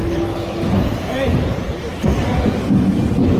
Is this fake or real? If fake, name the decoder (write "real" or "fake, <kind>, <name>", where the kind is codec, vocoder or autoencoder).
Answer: real